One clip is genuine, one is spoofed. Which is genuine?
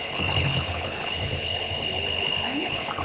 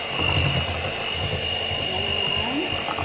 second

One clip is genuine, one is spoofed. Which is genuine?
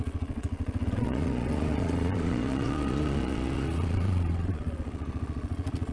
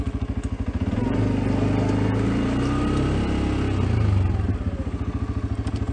second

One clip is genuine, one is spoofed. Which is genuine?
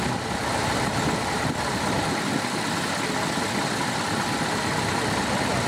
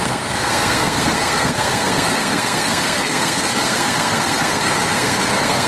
first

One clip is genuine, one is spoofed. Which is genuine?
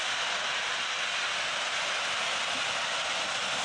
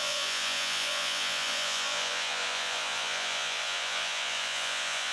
first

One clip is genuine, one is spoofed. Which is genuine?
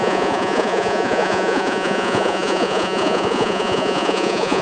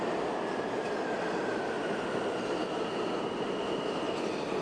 second